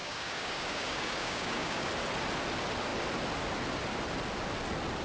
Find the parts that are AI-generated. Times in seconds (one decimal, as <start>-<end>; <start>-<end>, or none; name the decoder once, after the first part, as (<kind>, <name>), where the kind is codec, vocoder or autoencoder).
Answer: 0.0-1.9 (codec, DAC)